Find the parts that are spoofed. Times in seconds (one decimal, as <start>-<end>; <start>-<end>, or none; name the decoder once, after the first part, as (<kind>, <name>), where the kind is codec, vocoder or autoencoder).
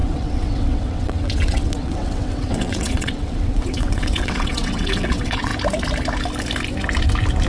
0.0-5.5 (vocoder, WaveNeXt)